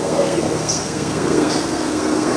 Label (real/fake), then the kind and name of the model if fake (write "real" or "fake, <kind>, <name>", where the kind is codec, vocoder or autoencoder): fake, codec, SNAC